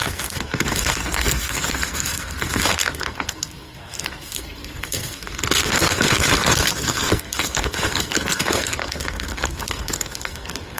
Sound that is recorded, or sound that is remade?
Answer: remade